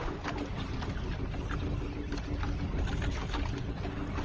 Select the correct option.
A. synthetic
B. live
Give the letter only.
B